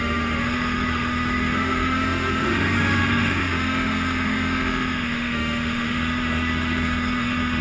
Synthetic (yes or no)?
yes